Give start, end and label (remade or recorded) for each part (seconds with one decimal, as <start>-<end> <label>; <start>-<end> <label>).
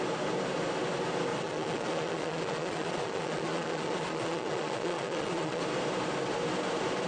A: 0.0-1.3 recorded; 1.3-5.6 remade; 5.6-7.1 recorded